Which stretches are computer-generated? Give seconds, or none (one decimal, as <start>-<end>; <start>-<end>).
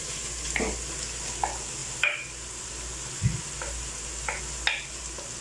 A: none